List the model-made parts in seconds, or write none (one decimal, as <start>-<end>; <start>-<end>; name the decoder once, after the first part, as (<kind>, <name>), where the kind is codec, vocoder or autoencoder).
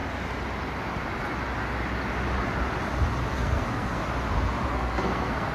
3.3-4.0 (codec, SNAC); 4.7-5.5